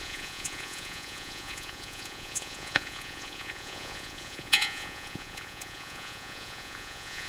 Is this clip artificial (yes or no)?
yes